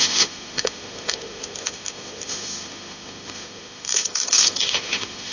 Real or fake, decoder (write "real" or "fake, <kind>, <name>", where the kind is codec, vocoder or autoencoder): fake, autoencoder, DAC-VAE